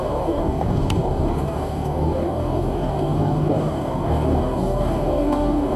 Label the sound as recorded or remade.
remade